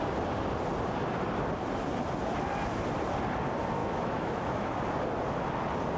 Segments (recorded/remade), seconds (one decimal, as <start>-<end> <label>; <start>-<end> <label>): 0.0-3.8 recorded; 3.8-4.8 remade; 4.8-6.0 recorded